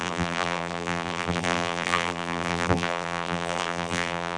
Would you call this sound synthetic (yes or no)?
yes